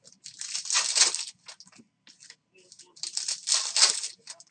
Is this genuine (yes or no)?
yes